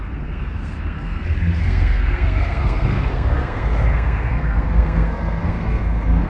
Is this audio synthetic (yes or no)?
yes